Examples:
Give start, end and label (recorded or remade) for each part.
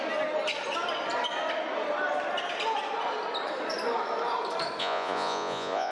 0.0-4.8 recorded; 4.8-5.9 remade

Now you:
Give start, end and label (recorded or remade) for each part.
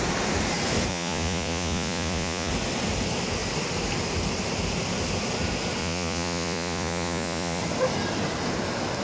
0.0-0.9 recorded; 0.9-2.5 remade; 2.5-5.8 recorded; 5.8-7.6 remade; 7.6-9.0 recorded